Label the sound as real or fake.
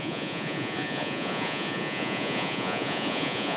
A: fake